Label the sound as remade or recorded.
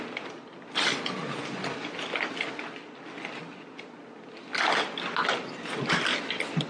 recorded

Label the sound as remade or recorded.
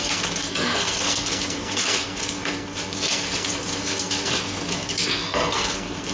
remade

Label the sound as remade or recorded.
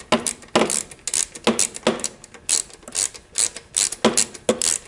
recorded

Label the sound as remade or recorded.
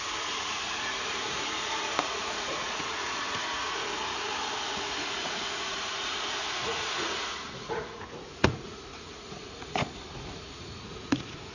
remade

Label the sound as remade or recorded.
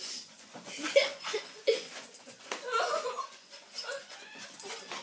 remade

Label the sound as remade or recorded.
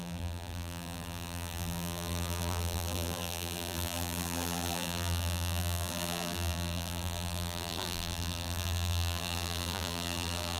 remade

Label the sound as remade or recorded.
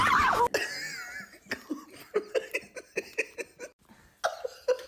recorded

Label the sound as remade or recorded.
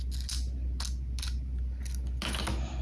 recorded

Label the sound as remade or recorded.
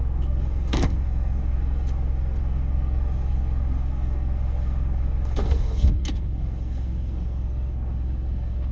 remade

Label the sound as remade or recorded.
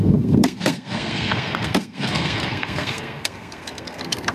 remade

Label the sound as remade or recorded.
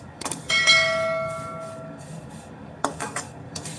remade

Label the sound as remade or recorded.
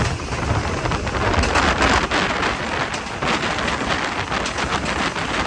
recorded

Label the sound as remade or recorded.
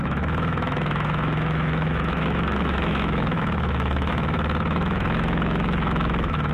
remade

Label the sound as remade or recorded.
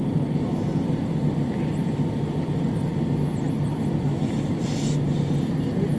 recorded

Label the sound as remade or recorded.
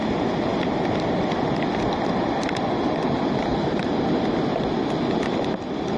recorded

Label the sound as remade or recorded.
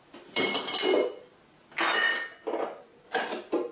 recorded